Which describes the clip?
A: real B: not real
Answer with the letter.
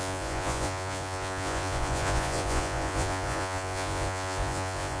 B